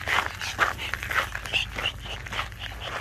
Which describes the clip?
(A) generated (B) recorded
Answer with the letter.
B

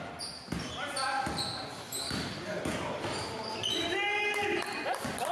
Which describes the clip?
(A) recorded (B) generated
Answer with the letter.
A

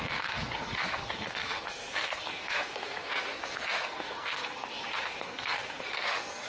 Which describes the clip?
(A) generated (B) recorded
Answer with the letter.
A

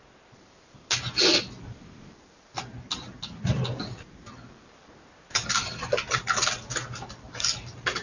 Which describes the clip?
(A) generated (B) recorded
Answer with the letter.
B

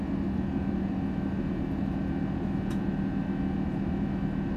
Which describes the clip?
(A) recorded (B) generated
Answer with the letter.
A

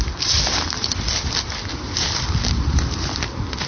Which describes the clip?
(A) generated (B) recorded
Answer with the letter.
B